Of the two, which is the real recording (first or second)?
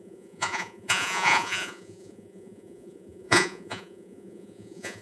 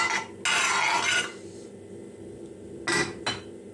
second